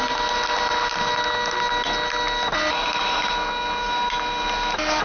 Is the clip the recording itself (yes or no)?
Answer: yes